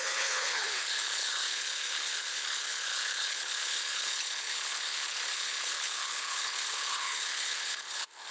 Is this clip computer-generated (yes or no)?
yes